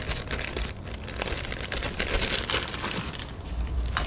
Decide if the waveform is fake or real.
real